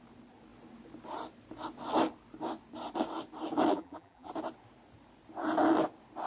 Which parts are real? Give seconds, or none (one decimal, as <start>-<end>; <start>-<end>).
0.0-3.7; 4.3-6.3